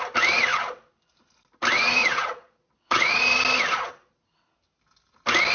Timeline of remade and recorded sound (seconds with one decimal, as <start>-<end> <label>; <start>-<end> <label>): 0.0-2.0 recorded; 2.0-3.2 remade; 3.2-5.5 recorded

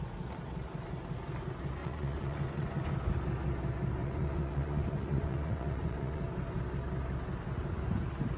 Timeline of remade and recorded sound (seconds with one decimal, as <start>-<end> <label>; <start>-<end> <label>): 0.0-1.8 recorded; 1.8-2.9 remade; 2.9-4.0 recorded; 4.0-6.2 remade; 6.2-8.4 recorded

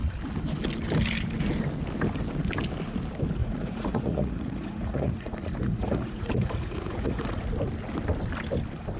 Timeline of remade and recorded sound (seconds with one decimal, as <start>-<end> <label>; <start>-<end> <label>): 0.0-3.4 recorded; 3.4-7.4 remade; 7.4-9.0 recorded

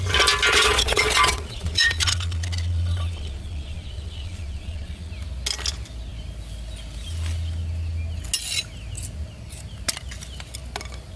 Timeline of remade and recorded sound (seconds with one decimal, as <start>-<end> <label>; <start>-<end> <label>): 0.0-0.5 recorded; 0.5-5.1 remade; 5.1-11.2 recorded